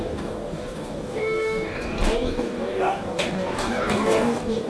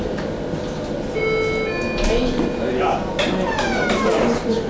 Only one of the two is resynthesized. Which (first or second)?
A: first